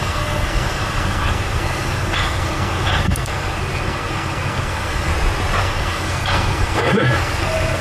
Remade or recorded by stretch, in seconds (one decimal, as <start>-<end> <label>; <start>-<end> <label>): 0.0-5.1 remade; 5.1-5.6 recorded; 5.6-7.8 remade